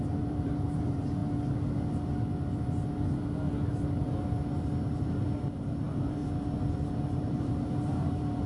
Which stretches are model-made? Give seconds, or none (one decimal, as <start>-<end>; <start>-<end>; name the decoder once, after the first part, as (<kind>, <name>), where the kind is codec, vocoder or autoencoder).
0.0-1.2 (vocoder, BigVGAN v2); 5.0-6.2; 7.1-8.5